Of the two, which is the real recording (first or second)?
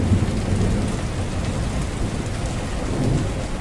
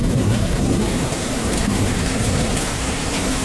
first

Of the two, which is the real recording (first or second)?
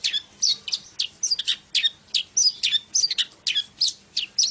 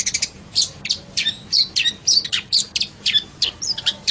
first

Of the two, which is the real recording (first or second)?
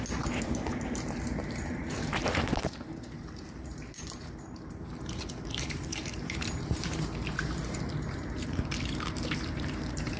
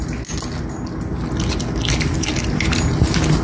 second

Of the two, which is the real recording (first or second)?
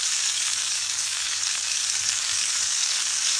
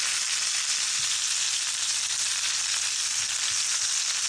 second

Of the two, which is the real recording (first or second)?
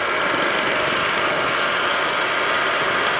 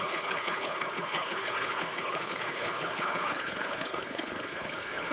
first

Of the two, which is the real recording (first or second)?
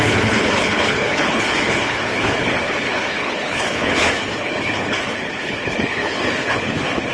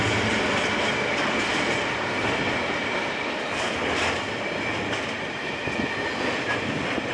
second